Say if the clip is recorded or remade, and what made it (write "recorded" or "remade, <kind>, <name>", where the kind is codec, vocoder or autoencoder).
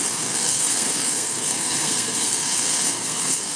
remade, codec, SNAC